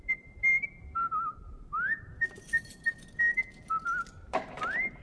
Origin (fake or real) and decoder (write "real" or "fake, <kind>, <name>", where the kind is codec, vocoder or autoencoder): real